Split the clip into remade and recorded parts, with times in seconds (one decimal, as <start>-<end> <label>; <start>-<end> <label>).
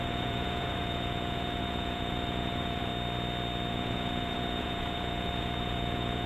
0.0-2.9 remade; 2.9-3.7 recorded; 3.7-6.3 remade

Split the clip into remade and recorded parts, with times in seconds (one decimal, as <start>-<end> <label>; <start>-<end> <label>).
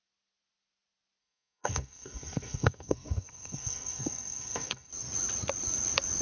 0.0-1.2 recorded; 1.2-4.9 remade; 4.9-6.2 recorded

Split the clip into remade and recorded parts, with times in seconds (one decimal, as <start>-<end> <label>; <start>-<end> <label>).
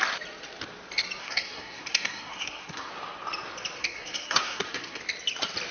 0.0-1.2 recorded; 1.2-2.9 remade; 2.9-3.8 recorded; 3.8-5.0 remade; 5.0-5.7 recorded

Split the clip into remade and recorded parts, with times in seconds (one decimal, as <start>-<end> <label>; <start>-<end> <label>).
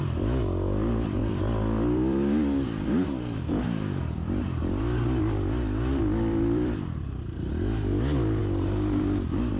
0.0-9.6 remade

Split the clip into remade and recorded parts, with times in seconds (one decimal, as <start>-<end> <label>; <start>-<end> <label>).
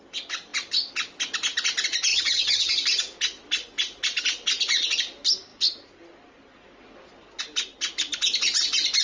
0.0-2.1 recorded; 2.1-2.7 remade; 2.7-9.0 recorded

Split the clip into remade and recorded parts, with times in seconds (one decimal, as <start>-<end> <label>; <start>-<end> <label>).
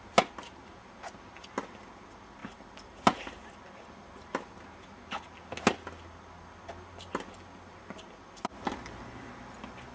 0.0-9.9 recorded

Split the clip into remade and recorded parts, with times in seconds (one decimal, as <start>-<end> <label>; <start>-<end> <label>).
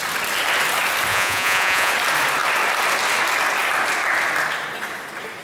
0.0-1.1 recorded; 1.1-1.9 remade; 1.9-5.4 recorded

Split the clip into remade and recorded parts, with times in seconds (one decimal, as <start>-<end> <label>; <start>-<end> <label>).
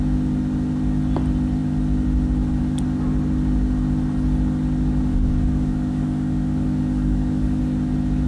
0.0-5.1 recorded; 5.1-7.6 remade; 7.6-8.3 recorded